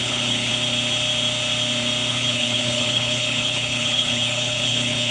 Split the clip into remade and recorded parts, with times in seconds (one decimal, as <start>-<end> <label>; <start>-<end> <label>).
0.0-0.5 remade; 0.5-2.1 recorded; 2.1-5.1 remade